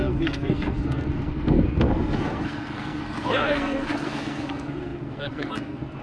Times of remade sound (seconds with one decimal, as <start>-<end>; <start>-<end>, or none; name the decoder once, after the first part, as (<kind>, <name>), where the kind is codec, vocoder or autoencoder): 0.0-6.0 (codec, SNAC)